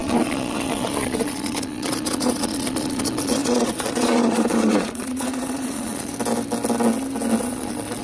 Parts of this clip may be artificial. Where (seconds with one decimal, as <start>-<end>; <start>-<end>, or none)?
0.0-6.1; 7.4-8.0